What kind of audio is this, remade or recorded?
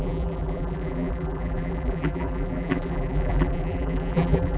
remade